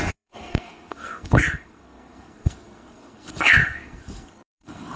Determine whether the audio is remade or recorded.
remade